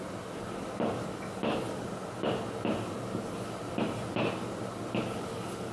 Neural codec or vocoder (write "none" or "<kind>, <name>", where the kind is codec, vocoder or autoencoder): none